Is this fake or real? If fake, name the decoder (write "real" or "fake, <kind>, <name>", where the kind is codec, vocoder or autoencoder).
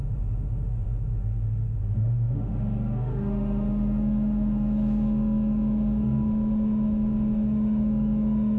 fake, autoencoder, DAC-VAE